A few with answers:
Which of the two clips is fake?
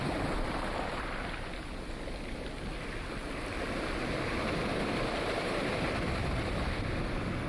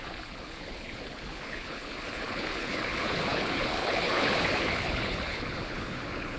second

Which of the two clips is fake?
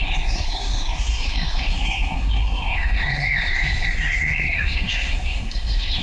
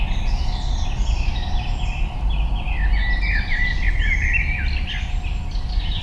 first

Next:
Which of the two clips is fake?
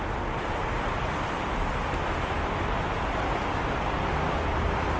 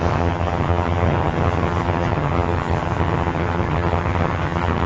second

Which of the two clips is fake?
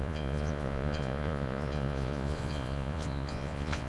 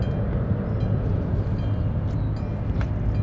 first